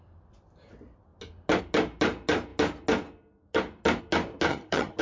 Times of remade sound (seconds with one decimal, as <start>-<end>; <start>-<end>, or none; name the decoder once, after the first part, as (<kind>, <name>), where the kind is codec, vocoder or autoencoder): 4.5-5.0 (vocoder, HiFi-GAN)